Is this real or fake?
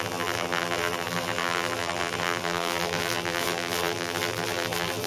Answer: fake